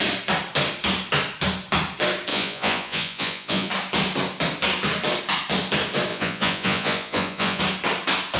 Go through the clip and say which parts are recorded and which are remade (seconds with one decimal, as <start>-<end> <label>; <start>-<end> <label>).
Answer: 0.0-2.3 recorded; 2.3-3.7 remade; 3.7-6.1 recorded; 6.1-7.6 remade; 7.6-8.4 recorded